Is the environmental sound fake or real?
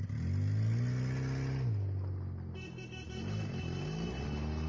real